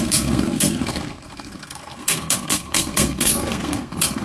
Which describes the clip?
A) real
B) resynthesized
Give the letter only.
B